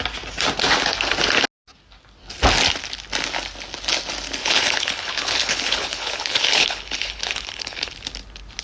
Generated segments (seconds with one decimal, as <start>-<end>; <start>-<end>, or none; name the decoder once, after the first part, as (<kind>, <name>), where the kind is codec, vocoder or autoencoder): 4.4-7.9 (codec, HILCodec)